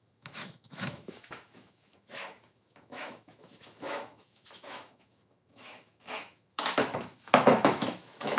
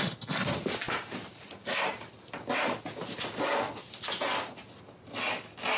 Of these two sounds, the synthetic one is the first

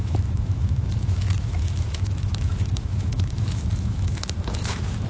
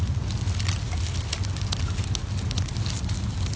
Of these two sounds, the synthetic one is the first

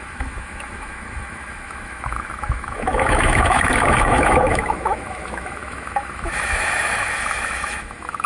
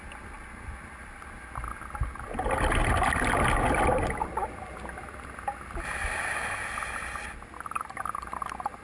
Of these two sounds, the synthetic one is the first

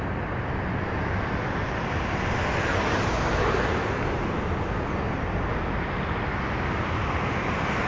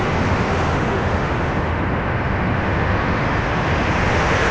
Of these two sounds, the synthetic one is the second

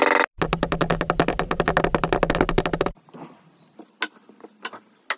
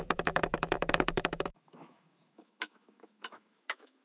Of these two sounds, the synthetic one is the second